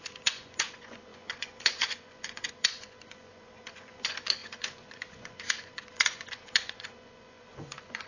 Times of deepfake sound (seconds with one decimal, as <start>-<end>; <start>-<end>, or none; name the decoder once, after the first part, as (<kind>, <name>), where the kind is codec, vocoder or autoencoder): 0.0-8.1 (vocoder, Vocos)